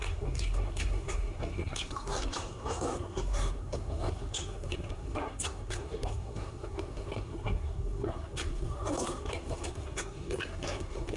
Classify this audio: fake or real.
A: fake